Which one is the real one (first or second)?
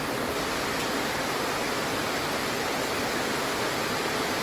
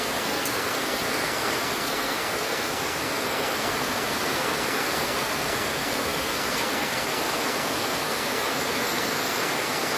first